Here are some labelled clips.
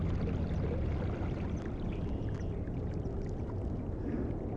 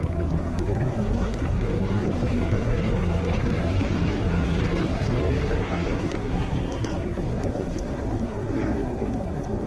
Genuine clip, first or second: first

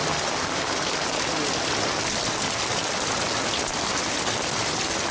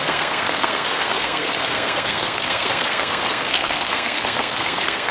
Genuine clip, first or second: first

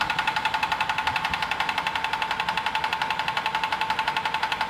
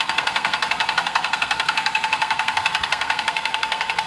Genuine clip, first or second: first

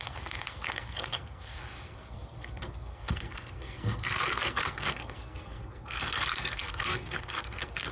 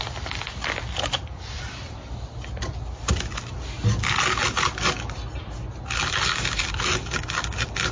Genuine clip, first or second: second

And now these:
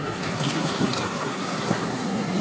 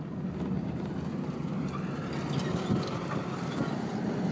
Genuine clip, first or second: second